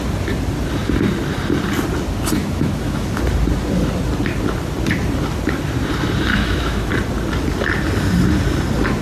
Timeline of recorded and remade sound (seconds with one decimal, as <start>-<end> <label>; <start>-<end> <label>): 0.0-2.4 recorded; 2.4-3.1 remade; 3.1-6.3 recorded; 6.3-6.9 remade; 6.9-9.0 recorded